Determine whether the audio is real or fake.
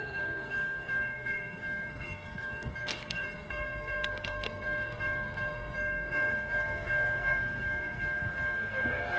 fake